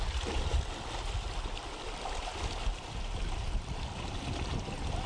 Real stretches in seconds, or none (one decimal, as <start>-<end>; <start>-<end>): 0.0-5.1